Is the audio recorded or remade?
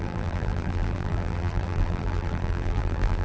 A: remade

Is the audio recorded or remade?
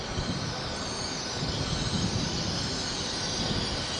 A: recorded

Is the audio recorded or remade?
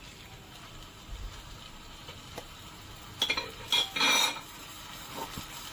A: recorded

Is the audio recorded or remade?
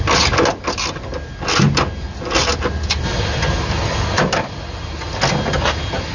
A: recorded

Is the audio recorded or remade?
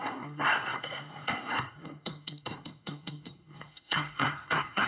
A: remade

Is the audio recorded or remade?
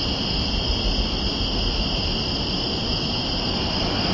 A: recorded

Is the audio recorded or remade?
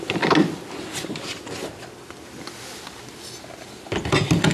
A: recorded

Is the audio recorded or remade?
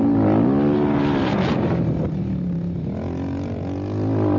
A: recorded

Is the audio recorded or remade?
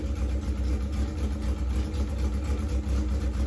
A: recorded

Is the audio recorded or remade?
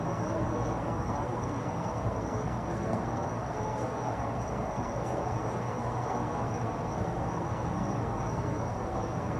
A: remade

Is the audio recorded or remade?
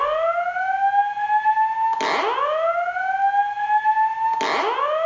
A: recorded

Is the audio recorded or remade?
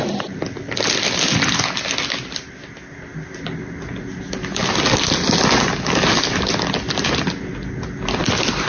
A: recorded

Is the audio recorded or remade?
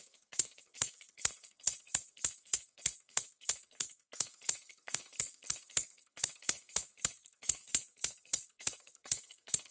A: remade